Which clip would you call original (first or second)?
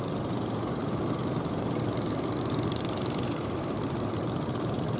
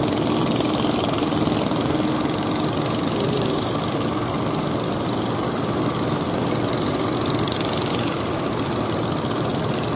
second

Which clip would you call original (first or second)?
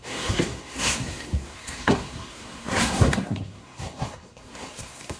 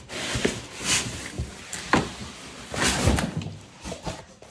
second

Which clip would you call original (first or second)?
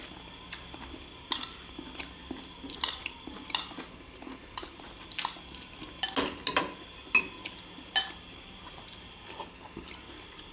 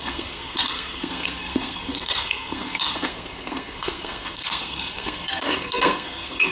first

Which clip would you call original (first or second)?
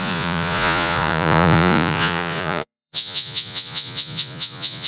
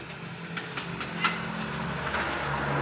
second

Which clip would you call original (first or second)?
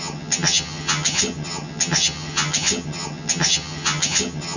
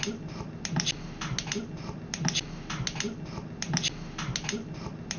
second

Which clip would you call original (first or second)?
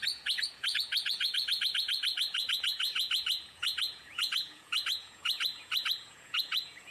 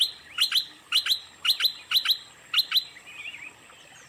second